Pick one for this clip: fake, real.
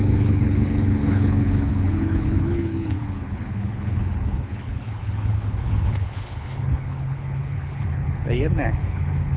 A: fake